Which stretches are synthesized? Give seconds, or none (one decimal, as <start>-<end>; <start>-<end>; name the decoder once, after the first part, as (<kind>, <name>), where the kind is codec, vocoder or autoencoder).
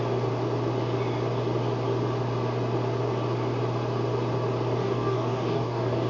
4.8-6.1 (codec, DAC)